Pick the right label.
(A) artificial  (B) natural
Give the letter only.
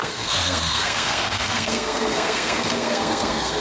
A